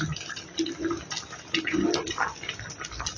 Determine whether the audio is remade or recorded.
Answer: recorded